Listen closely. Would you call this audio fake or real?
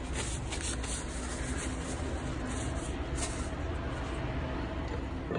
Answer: real